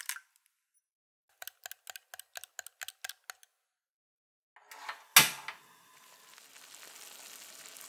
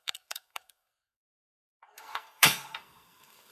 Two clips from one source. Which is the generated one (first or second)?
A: second